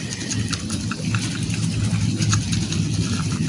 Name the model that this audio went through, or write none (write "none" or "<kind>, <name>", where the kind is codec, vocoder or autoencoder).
none